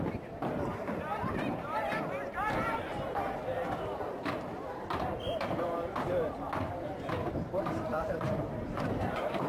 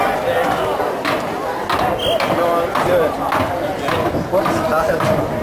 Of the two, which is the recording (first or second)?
second